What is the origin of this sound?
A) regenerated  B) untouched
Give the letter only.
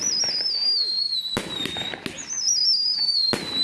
B